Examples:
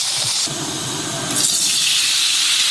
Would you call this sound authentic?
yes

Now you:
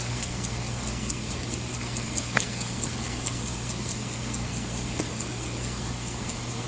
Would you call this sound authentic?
no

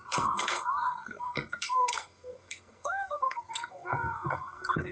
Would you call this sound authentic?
no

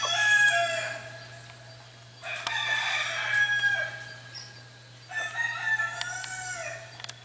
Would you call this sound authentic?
yes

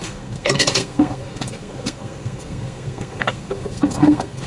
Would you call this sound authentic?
no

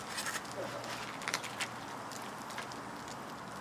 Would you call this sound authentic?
yes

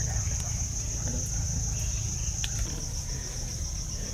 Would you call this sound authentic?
yes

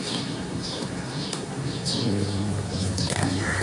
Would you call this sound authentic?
no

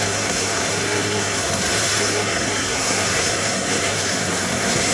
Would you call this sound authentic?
no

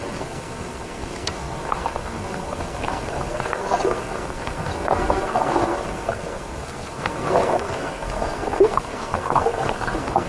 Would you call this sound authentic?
no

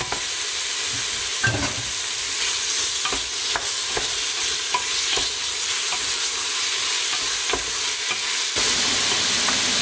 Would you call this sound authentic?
yes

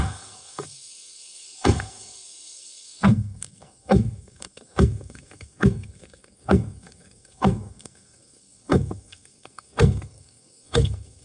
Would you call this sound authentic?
no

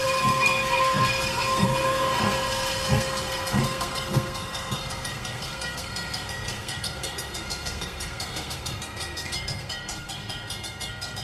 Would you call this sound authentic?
no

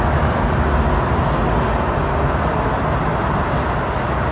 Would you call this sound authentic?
yes